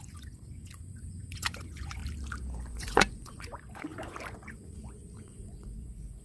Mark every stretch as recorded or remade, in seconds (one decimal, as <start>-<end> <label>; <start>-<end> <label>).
0.0-2.0 remade; 2.0-2.6 recorded; 2.6-6.2 remade